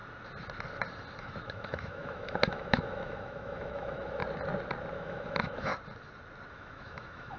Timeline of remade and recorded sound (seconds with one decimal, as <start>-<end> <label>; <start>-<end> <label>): 0.0-1.2 recorded; 1.2-4.2 remade; 4.2-4.9 recorded; 4.9-5.7 remade; 5.7-6.5 recorded; 6.5-7.4 remade